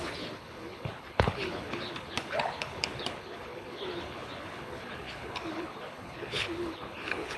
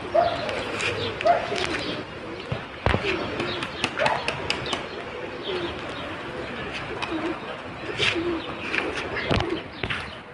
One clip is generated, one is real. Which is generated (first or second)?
first